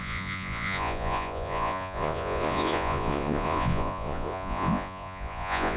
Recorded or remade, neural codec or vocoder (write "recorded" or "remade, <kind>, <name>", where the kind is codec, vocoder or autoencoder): remade, vocoder, Vocos